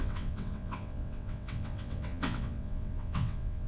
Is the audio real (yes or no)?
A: no